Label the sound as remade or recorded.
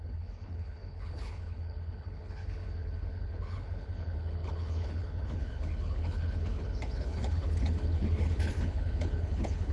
remade